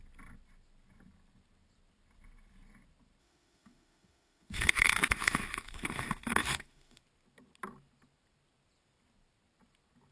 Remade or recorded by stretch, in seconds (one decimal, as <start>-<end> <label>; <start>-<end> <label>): 0.0-3.2 recorded; 3.2-7.0 remade; 7.0-10.1 recorded